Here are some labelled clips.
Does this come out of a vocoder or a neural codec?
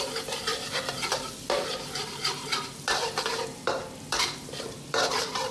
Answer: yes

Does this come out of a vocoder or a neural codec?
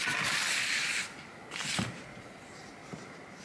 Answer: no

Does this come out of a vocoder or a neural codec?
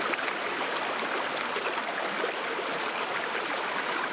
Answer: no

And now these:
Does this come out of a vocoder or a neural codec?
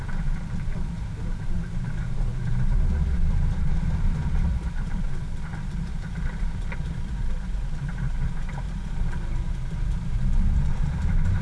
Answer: yes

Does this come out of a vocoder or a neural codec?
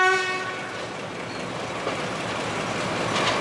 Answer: no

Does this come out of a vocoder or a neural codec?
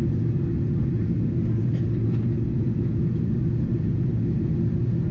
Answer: no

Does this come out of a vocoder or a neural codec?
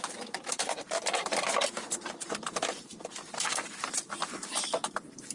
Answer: yes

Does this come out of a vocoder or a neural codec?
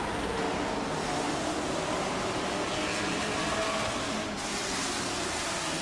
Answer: no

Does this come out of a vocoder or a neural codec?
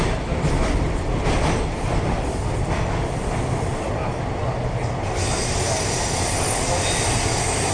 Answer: no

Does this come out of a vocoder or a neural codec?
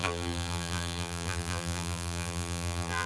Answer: yes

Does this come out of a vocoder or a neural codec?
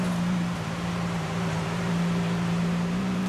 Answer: yes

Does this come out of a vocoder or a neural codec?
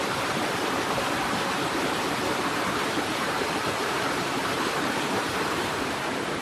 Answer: yes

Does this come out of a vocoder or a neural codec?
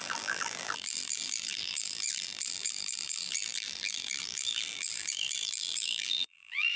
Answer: yes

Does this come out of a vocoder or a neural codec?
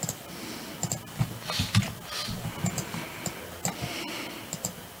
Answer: no